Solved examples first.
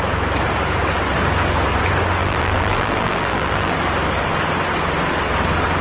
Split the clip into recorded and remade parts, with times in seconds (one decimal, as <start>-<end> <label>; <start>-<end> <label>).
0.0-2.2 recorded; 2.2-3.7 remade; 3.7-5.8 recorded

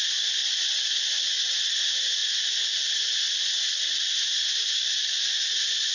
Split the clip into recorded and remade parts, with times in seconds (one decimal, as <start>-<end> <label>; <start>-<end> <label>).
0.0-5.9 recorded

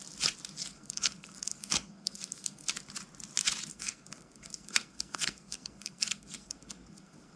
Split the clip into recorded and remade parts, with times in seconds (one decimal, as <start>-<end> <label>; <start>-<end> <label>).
0.0-0.6 recorded; 0.6-2.7 remade; 2.7-3.7 recorded; 3.7-7.4 remade